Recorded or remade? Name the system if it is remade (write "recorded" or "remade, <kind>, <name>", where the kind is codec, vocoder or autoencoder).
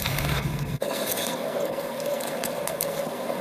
remade, codec, SNAC